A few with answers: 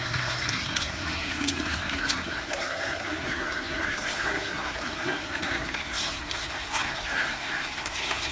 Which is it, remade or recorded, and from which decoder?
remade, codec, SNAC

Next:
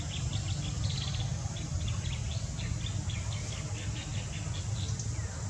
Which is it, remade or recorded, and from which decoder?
recorded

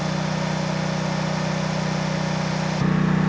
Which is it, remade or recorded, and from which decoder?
recorded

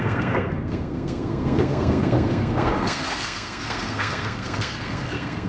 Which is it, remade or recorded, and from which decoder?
remade, codec, SNAC